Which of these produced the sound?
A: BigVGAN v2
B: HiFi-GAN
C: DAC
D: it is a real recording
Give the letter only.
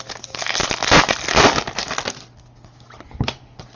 D